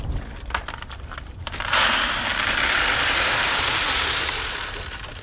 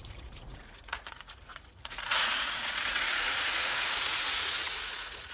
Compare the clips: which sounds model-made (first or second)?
second